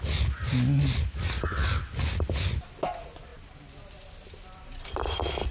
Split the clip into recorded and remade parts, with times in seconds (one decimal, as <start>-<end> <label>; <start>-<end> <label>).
0.0-5.5 recorded